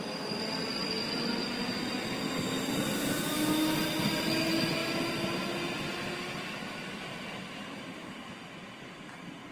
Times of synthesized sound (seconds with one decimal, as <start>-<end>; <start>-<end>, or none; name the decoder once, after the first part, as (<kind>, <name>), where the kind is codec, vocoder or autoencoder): none